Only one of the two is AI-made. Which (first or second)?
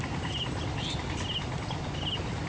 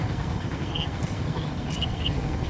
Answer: second